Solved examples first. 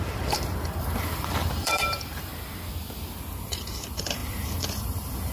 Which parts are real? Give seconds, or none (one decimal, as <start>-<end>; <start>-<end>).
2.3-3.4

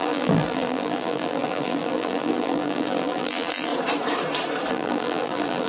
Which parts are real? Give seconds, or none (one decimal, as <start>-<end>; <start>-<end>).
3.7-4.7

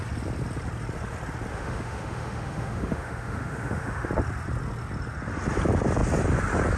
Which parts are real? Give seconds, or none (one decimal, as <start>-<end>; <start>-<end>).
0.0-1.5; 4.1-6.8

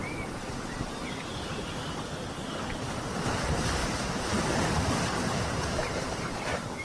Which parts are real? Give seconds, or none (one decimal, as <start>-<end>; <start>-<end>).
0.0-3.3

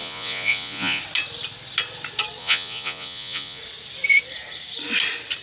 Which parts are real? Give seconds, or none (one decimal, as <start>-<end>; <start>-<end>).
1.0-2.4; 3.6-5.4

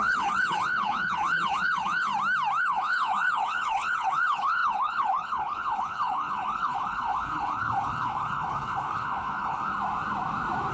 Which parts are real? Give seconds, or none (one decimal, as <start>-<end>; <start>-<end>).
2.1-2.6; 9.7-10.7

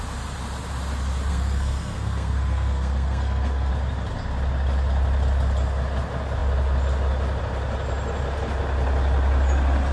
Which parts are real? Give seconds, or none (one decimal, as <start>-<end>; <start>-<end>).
0.0-1.3; 3.7-9.9

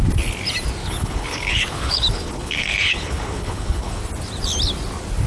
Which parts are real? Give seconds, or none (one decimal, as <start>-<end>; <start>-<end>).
0.0-0.8; 4.0-5.3